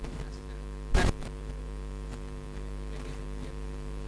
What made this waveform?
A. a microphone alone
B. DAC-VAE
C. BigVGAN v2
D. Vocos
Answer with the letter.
C